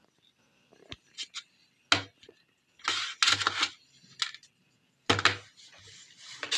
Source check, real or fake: real